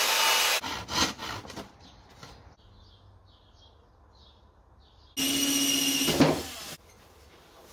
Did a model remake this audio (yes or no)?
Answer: no